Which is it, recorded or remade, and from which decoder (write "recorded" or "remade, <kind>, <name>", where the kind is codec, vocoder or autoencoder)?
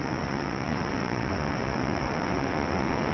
remade, vocoder, WaveNeXt